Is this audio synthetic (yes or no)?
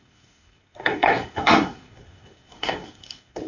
yes